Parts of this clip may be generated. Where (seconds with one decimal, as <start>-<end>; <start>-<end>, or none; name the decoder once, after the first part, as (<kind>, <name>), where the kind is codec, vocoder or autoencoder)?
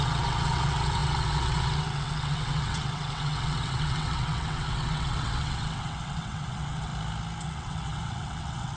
0.0-6.9 (vocoder, WaveNeXt); 7.4-8.8